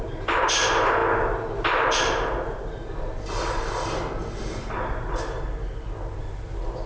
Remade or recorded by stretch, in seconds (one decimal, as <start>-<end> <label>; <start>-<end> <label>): 0.0-6.9 recorded